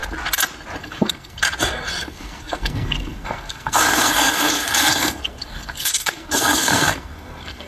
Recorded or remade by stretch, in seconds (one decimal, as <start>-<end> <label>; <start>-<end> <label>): 0.0-0.8 recorded; 0.8-1.4 remade; 1.4-2.0 recorded; 2.0-7.7 remade

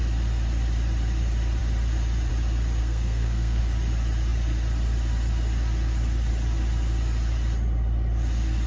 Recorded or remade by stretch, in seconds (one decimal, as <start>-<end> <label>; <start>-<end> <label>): 0.0-2.8 recorded; 2.8-3.6 remade; 3.6-8.7 recorded

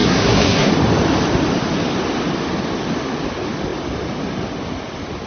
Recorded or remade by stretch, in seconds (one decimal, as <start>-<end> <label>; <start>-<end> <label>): 0.0-0.7 remade; 0.7-5.3 recorded

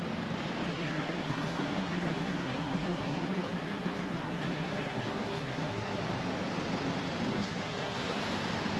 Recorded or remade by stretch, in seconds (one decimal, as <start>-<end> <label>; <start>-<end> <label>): 0.0-0.7 recorded; 0.7-6.0 remade; 6.0-7.3 recorded; 7.3-8.2 remade; 8.2-8.8 recorded

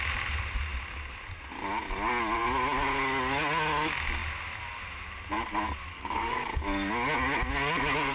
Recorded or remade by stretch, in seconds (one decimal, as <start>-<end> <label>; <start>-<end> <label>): 0.0-5.9 recorded; 5.9-6.6 remade; 6.6-8.1 recorded